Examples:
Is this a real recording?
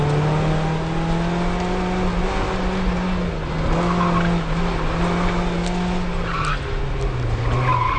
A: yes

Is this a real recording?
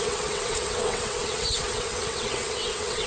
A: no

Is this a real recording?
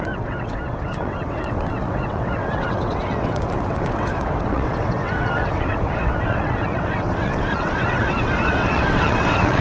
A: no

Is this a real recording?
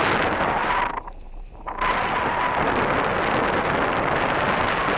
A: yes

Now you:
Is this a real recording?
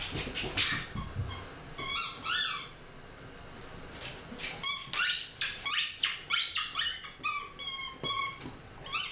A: yes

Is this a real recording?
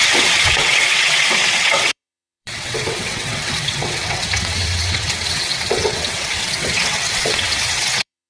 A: no